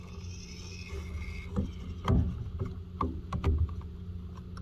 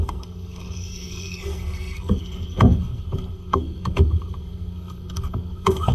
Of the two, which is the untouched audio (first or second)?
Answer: first